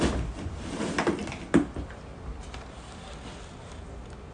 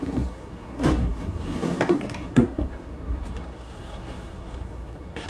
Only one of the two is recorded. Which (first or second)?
first